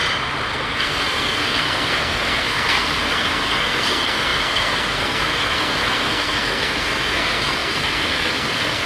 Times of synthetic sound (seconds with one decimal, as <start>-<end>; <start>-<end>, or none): 0.5-8.9